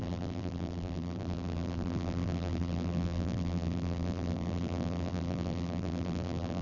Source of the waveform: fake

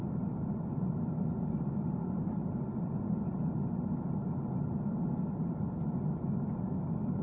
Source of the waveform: real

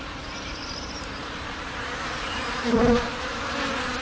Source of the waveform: fake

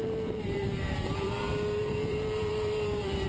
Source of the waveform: fake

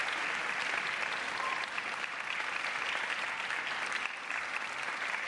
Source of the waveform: real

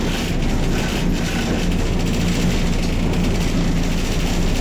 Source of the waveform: real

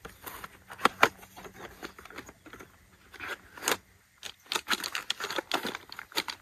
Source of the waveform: real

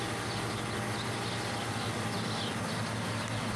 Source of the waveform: real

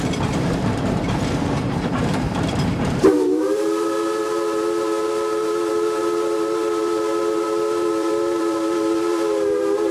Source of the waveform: fake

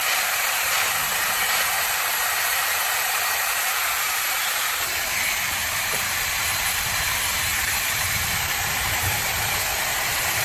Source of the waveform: fake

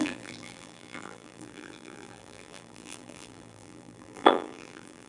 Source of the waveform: fake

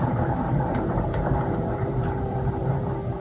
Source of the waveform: fake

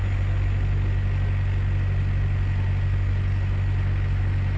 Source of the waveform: real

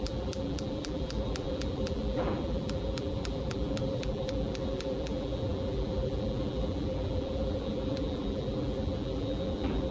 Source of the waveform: fake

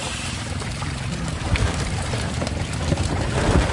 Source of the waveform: fake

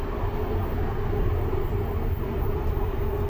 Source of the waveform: real